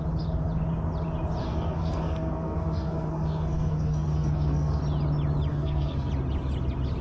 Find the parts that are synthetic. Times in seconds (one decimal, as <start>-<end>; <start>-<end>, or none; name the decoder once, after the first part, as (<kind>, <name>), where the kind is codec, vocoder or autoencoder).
1.4-4.8 (codec, SNAC); 5.5-6.1